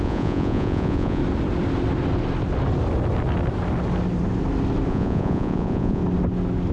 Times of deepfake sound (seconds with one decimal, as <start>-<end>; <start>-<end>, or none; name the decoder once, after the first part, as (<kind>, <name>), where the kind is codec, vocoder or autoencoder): 0.0-1.2 (vocoder, Vocos); 4.9-6.0